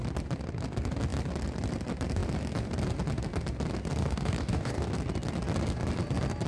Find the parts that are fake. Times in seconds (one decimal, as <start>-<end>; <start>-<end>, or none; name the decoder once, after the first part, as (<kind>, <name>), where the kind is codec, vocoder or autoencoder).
4.0-4.9 (codec, DAC)